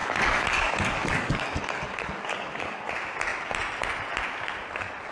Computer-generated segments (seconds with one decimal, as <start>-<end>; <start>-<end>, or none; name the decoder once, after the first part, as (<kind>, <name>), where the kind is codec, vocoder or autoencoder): 0.0-2.9 (codec, DAC)